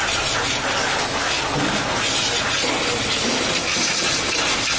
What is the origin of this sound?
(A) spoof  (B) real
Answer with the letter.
B